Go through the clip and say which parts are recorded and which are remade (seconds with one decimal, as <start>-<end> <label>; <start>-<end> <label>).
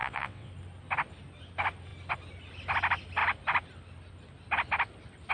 0.0-0.5 remade; 0.5-5.3 recorded